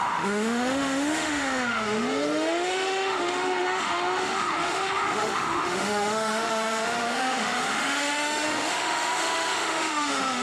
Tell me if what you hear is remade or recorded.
remade